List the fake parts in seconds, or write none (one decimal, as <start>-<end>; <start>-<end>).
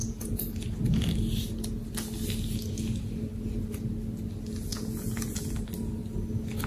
0.0-0.5; 4.7-5.5